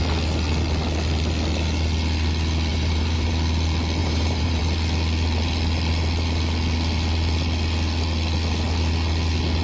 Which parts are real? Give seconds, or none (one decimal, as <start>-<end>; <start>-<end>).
0.0-2.7; 3.3-4.0; 4.6-9.6